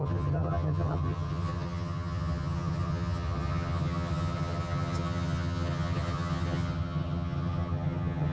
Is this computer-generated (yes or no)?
yes